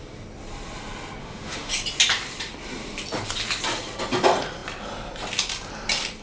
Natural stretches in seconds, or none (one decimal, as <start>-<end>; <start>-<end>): 0.0-1.2; 1.7-6.2